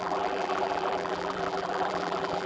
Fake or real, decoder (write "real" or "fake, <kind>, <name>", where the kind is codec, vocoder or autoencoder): fake, vocoder, BigVGAN v2